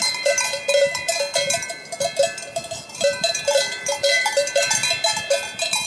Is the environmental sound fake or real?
fake